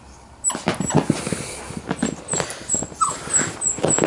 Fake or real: real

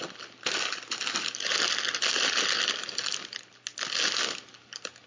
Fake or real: real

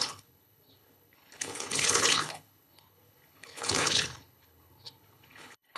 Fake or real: fake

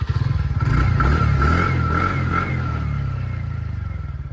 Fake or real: real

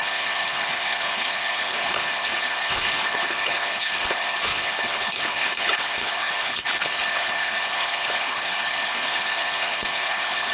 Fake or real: fake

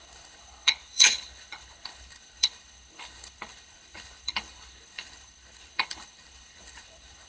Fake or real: fake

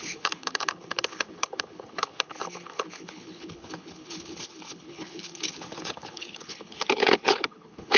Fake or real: fake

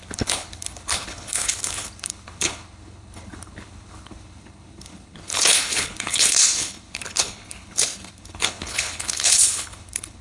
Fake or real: fake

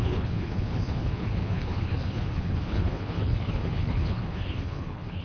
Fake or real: fake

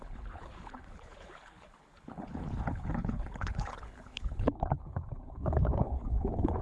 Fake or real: fake